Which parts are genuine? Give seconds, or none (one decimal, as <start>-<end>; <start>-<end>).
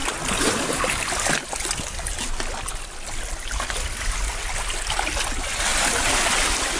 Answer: 0.0-6.8